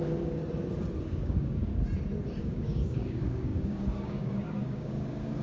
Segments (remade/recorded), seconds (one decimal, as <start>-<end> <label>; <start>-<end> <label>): 0.0-0.4 remade; 0.4-1.0 recorded; 1.0-1.7 remade; 1.7-2.4 recorded; 2.4-5.4 remade